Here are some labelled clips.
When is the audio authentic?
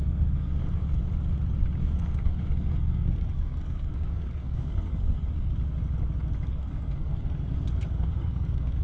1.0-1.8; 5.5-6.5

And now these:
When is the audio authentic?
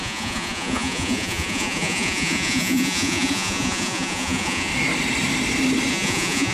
4.7-5.9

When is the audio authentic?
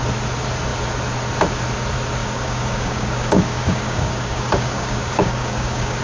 0.0-2.2